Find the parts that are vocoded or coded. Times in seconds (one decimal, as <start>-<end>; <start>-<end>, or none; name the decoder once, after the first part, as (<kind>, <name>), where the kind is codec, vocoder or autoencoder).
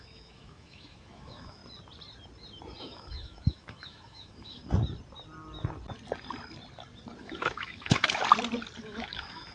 0.0-1.6 (autoencoder, DAC-VAE); 2.8-4.6; 7.2-8.2; 8.8-9.5